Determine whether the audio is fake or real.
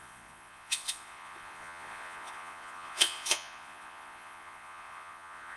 fake